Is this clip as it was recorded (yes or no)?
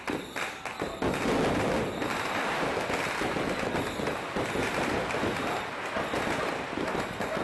yes